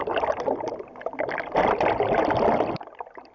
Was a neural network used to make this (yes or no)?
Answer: yes